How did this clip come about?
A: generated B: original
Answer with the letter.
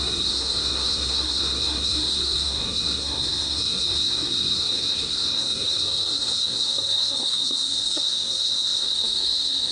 A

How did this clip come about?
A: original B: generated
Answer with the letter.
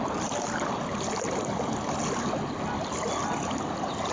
A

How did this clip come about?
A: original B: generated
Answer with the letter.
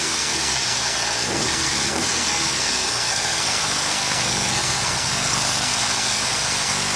B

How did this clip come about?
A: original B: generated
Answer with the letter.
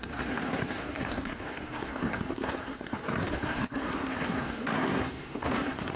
B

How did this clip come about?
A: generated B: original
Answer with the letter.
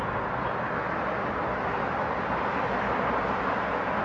B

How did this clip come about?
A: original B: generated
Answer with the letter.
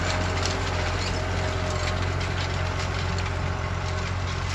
A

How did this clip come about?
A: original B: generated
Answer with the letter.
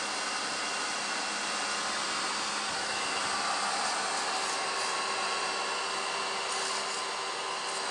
A